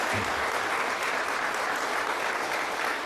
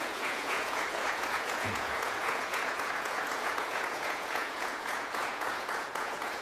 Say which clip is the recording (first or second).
first